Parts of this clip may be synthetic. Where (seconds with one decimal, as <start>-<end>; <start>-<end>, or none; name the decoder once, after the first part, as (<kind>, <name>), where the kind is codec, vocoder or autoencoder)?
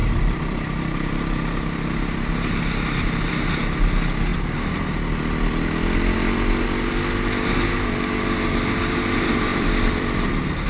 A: 0.0-1.2 (vocoder, BigVGAN v2); 9.5-10.7